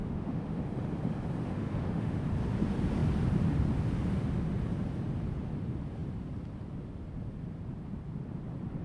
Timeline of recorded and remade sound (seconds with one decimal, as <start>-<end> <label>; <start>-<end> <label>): 0.0-0.6 remade; 0.6-1.4 recorded; 1.4-2.2 remade; 2.2-8.8 recorded